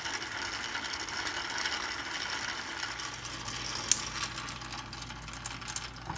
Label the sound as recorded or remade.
recorded